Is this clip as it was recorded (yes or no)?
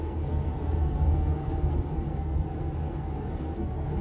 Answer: no